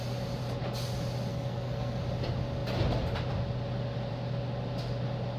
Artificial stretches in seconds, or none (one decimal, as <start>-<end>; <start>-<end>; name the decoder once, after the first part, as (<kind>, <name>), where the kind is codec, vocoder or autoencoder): 1.3-2.0 (codec, SNAC)